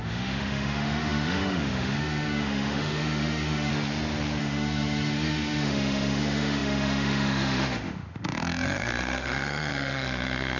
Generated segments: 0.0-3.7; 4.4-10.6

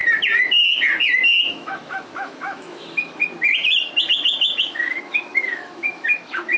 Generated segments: 1.5-3.2; 4.6-6.6

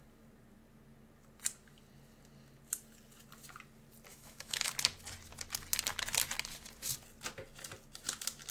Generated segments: 4.1-4.7